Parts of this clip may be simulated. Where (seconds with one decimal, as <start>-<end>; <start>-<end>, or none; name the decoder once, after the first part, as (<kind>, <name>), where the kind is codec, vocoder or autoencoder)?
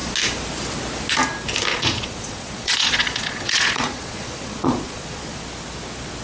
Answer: 1.7-5.4 (vocoder, Vocos)